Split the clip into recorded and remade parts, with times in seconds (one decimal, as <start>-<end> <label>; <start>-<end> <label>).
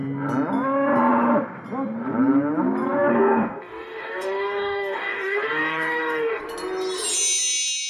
0.0-3.1 recorded; 3.1-6.4 remade; 6.4-7.9 recorded